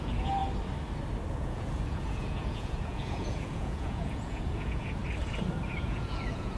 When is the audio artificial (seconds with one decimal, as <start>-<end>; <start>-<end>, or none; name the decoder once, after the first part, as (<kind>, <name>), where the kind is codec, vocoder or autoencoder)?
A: 0.0-0.4 (vocoder, Vocos); 1.3-5.0; 5.7-6.6